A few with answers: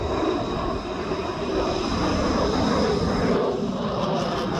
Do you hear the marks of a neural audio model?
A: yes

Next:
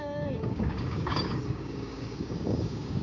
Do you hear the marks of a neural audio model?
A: yes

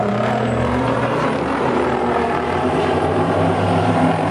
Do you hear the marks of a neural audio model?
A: yes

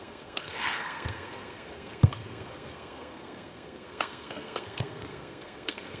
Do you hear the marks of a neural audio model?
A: yes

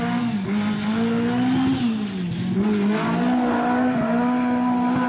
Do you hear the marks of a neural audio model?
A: no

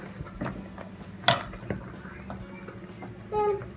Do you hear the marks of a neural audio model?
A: no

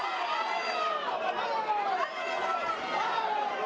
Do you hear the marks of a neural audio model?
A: yes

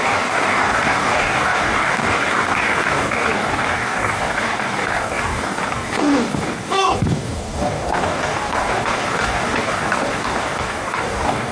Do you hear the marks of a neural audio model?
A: yes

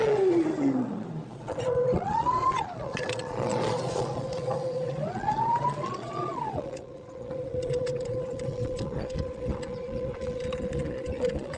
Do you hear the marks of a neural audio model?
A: yes